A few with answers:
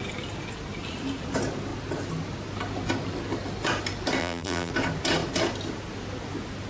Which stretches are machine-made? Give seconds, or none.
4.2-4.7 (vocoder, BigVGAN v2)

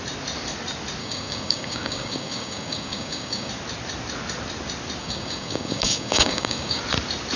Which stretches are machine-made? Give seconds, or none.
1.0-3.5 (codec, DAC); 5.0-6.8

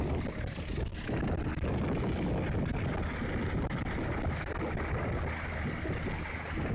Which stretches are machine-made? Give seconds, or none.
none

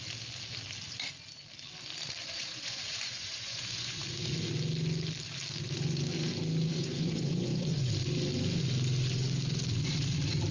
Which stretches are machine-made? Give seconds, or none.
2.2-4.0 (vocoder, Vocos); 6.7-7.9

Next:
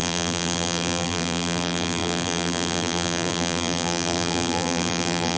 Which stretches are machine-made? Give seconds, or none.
0.0-5.4 (vocoder, BigVGAN v2)

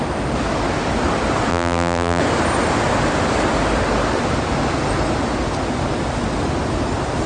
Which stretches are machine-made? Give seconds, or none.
1.5-2.2 (vocoder, BigVGAN v2)